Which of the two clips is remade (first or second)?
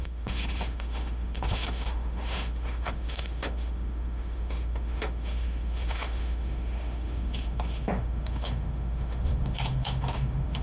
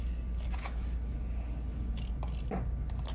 first